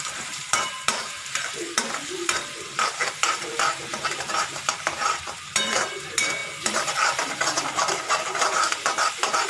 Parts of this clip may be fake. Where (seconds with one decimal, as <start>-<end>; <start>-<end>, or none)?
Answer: 0.0-6.4; 6.9-9.5